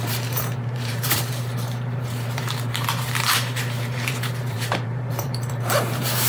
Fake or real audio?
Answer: fake